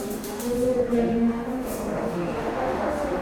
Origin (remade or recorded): remade